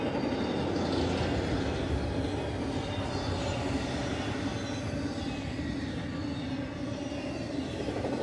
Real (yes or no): yes